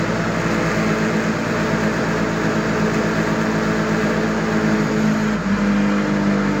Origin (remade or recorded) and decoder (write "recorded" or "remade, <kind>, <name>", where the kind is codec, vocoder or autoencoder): recorded